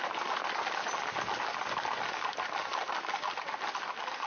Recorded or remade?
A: recorded